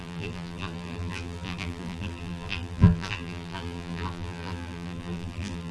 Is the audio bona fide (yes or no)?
no